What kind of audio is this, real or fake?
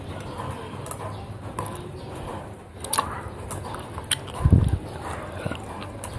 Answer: real